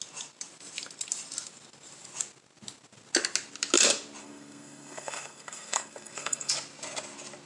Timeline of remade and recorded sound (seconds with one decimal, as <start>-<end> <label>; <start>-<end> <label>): 0.0-4.2 recorded; 4.2-6.5 remade; 6.5-7.5 recorded